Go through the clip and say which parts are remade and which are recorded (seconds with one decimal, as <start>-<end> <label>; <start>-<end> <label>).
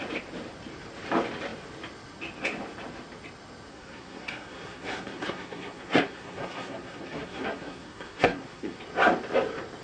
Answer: 0.0-3.7 recorded; 3.7-8.8 remade; 8.8-9.8 recorded